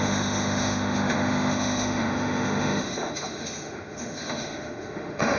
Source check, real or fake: fake